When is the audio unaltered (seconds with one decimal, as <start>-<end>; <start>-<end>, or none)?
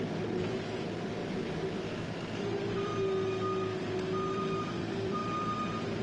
1.2-2.0; 2.9-4.3; 5.2-6.0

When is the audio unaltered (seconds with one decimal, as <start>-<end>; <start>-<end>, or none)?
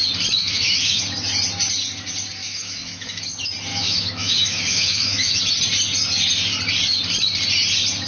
0.0-0.4; 1.0-2.4; 3.2-3.7; 5.4-8.1